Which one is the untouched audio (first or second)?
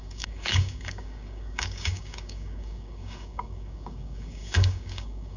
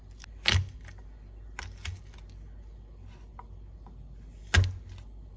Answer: second